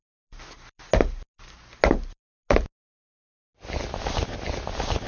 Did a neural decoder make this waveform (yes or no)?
no